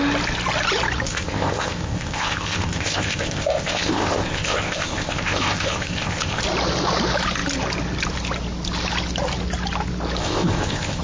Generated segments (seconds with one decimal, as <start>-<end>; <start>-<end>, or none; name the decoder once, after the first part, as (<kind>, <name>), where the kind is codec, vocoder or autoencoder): 1.1-6.4 (codec, ZipCodec); 10.2-11.0